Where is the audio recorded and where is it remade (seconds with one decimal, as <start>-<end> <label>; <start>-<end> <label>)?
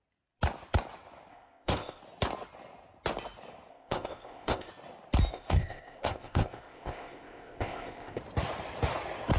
0.0-1.3 recorded; 1.3-2.0 remade; 2.0-3.7 recorded; 3.7-4.7 remade; 4.7-5.3 recorded; 5.3-8.2 remade; 8.2-9.4 recorded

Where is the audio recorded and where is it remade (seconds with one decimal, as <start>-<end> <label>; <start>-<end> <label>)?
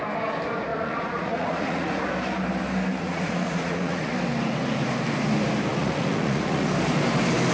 0.0-0.7 recorded; 0.7-2.0 remade; 2.0-3.0 recorded; 3.0-4.1 remade; 4.1-5.7 recorded; 5.7-6.7 remade; 6.7-7.5 recorded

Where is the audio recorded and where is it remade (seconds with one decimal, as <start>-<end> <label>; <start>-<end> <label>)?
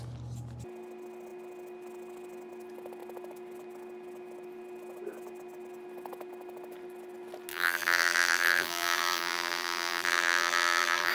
0.0-7.5 recorded; 7.5-11.1 remade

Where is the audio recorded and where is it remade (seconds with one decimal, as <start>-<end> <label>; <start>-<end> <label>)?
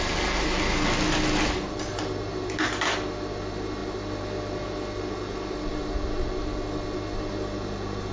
0.0-8.1 recorded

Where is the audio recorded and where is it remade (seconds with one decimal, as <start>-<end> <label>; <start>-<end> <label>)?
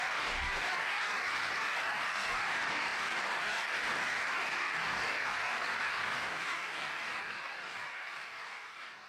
0.0-9.1 remade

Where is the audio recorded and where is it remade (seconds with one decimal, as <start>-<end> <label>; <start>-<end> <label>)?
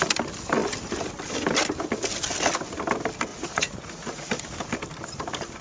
0.0-3.3 recorded; 3.3-4.3 remade; 4.3-5.6 recorded